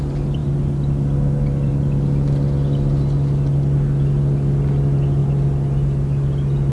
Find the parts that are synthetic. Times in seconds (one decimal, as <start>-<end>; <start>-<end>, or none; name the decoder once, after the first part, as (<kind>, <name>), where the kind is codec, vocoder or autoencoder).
none